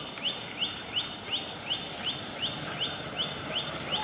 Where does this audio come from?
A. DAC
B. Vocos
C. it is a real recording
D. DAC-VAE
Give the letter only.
C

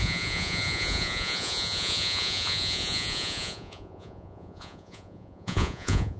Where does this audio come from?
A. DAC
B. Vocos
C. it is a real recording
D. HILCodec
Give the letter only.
B